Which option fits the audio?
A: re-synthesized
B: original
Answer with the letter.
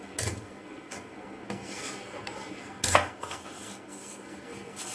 A